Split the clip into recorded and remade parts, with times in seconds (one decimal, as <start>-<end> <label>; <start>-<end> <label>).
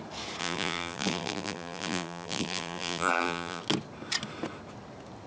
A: 0.0-0.4 recorded; 0.4-3.6 remade; 3.6-5.3 recorded